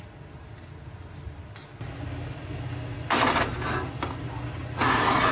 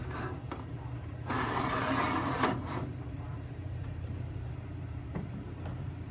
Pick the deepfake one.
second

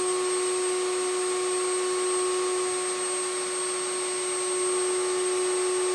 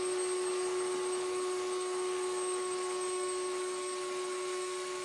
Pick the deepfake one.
second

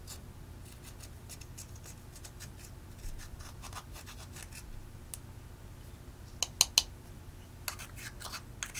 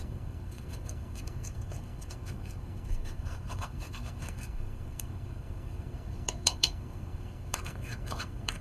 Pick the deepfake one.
second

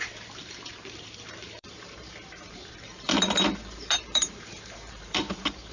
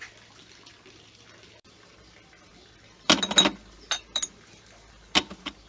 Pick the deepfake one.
first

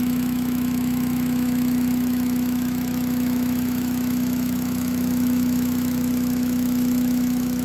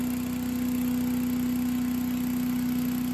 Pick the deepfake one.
first